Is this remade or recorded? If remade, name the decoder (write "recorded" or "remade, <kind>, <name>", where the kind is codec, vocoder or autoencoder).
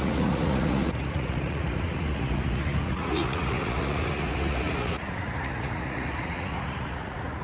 remade, vocoder, Vocos